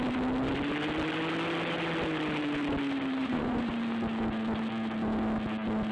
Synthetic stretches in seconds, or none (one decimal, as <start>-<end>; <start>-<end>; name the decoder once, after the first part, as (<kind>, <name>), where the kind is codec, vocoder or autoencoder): 3.2-3.7 (vocoder, Vocos)